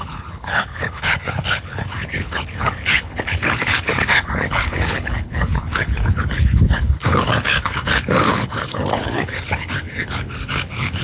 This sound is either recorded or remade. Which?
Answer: remade